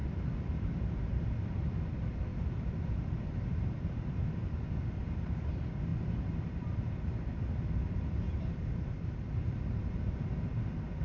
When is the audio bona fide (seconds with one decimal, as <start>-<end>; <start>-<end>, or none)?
1.7-2.3; 4.3-5.9; 10.3-11.0